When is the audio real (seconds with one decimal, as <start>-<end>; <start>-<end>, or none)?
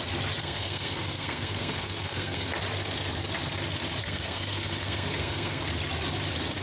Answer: 0.0-0.4; 2.5-4.0; 5.6-6.6